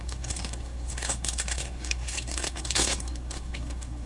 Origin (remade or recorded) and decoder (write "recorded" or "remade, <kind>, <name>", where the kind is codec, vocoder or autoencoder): remade, codec, SNAC